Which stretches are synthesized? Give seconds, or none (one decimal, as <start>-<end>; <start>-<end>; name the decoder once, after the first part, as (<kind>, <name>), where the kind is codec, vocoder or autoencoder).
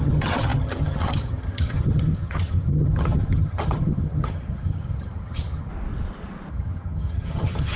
0.0-5.7 (vocoder, HiFi-GAN); 6.5-7.8